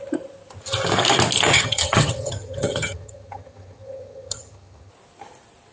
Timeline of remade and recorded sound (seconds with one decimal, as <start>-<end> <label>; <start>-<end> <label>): 0.0-1.5 recorded; 1.5-4.9 remade; 4.9-5.7 recorded